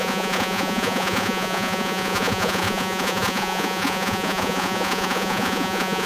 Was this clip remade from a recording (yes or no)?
yes